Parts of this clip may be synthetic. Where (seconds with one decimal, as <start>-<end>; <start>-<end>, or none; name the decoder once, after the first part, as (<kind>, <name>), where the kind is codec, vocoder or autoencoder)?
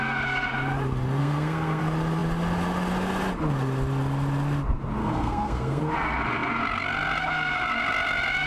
1.2-1.8 (codec, SNAC); 5.0-5.8